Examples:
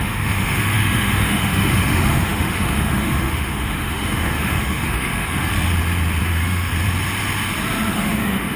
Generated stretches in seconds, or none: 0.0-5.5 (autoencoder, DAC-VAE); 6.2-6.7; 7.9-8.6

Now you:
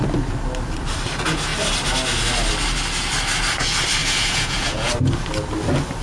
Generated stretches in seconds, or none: 4.0-4.9 (vocoder, Vocos)

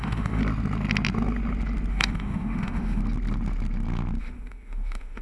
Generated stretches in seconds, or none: 0.0-0.4 (autoencoder, DAC-VAE); 1.9-3.0; 4.2-5.2